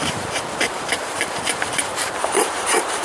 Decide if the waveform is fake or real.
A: fake